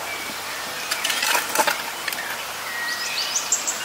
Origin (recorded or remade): recorded